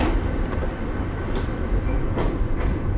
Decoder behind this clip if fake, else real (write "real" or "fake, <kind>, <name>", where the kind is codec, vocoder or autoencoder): real